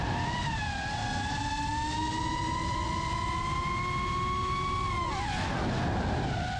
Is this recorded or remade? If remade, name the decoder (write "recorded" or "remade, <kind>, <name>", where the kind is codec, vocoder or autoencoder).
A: recorded